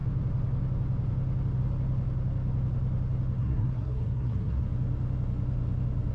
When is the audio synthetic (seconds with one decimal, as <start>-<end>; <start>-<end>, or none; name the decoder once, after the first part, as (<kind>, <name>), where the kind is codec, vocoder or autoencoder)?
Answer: 3.4-4.6 (codec, SNAC)